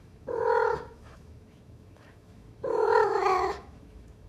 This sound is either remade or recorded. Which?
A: remade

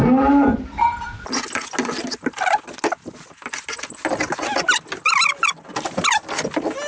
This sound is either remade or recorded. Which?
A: recorded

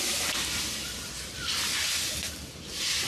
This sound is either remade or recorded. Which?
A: recorded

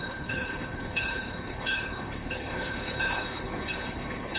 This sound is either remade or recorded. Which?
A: remade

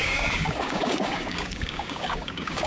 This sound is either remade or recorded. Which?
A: remade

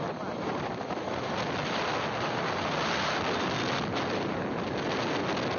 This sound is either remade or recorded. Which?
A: recorded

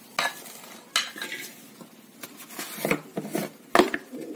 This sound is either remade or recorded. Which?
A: recorded